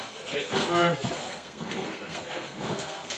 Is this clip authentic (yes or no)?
no